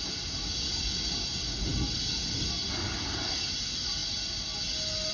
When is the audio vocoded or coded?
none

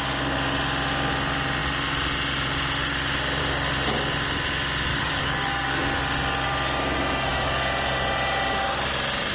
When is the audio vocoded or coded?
4.9-5.8 (codec, DAC)

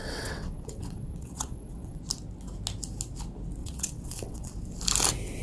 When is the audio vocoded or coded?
0.0-2.0 (vocoder, WaveNeXt); 3.6-4.5

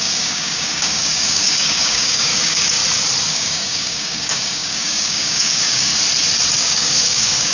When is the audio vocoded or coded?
0.0-2.8 (codec, DAC); 3.3-5.9; 6.6-7.5